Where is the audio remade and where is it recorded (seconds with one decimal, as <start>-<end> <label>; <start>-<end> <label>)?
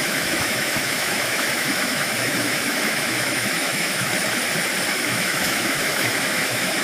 0.0-4.1 remade; 4.1-4.9 recorded; 4.9-6.8 remade